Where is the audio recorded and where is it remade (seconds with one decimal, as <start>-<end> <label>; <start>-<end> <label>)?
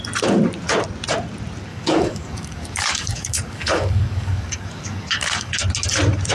0.0-1.7 recorded; 1.7-5.5 remade; 5.5-6.3 recorded